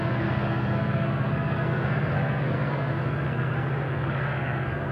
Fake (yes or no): yes